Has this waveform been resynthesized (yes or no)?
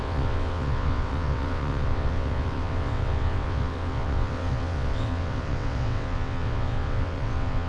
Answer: yes